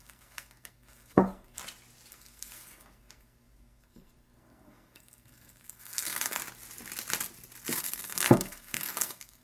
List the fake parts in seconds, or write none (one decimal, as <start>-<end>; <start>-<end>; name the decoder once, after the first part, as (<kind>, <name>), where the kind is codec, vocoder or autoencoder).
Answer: 0.0-1.6 (codec, SNAC); 2.1-6.4; 7.8-9.4

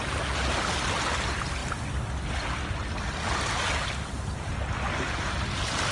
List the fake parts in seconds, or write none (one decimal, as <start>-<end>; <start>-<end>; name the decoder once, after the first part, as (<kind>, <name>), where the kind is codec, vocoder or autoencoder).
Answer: none

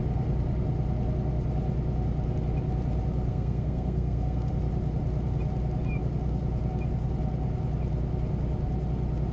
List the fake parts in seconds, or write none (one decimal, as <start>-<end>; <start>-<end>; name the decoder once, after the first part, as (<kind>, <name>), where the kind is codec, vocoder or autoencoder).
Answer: 3.3-4.5 (codec, SNAC)

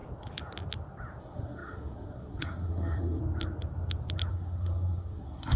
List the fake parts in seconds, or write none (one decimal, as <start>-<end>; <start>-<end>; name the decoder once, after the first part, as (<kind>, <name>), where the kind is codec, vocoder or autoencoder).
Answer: 1.2-3.2 (codec, SNAC); 4.3-5.6

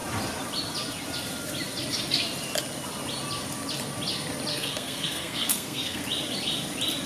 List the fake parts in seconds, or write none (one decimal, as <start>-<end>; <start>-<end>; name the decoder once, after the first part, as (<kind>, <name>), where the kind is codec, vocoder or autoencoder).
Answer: 4.5-6.0 (codec, SNAC)

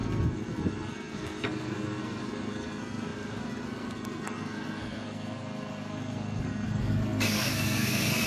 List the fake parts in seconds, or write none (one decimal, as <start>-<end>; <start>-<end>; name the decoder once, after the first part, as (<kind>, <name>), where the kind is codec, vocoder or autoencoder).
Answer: 0.0-8.3 (codec, SNAC)

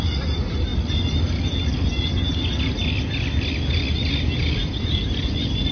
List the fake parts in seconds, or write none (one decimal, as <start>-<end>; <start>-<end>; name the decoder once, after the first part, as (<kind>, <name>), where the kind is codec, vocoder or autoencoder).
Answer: none

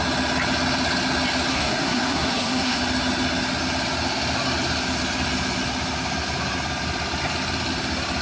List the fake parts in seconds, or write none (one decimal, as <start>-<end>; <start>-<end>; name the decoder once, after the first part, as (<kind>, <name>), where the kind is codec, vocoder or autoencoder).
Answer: 1.5-2.8 (codec, SNAC)